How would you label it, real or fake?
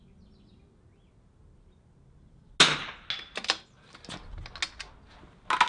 real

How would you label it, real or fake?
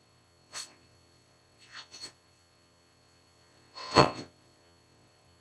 fake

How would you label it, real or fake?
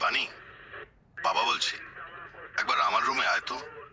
fake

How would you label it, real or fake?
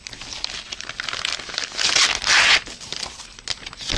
real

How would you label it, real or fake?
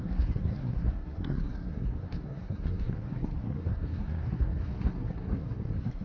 fake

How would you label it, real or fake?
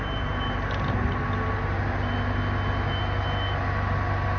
real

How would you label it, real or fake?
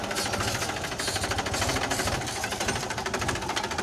real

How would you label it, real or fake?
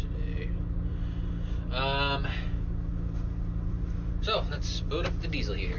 real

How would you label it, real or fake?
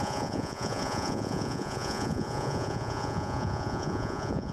fake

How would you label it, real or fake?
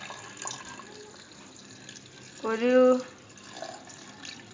real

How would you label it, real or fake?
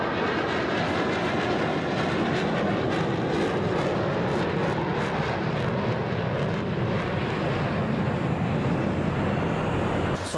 real